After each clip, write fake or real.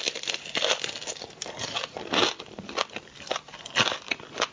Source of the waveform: real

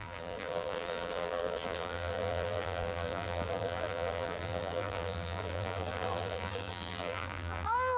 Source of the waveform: fake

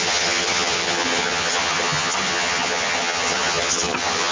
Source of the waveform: fake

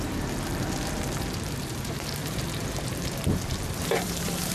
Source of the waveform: fake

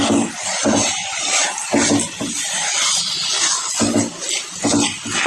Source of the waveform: real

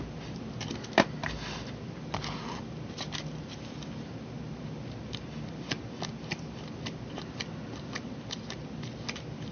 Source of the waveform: real